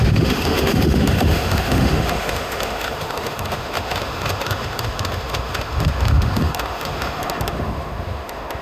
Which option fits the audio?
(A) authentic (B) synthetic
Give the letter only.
B